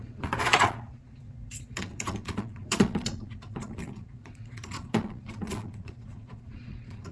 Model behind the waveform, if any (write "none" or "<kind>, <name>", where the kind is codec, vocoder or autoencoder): vocoder, Vocos